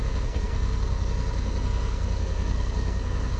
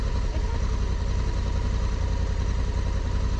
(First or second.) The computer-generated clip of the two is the first